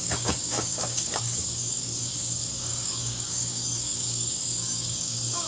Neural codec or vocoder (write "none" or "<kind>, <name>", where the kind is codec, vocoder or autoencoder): codec, DAC